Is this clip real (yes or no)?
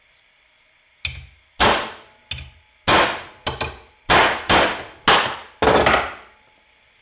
yes